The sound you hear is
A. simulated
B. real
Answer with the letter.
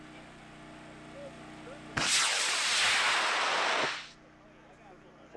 B